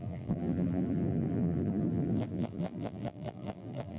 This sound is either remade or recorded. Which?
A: remade